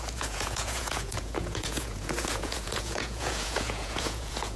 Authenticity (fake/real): fake